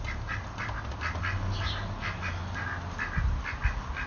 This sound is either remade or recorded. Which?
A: recorded